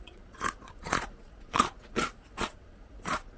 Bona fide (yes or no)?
no